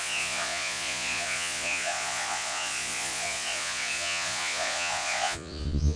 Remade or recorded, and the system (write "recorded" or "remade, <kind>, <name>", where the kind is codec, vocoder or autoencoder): remade, vocoder, Vocos